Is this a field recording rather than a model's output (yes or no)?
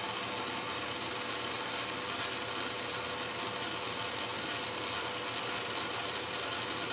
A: yes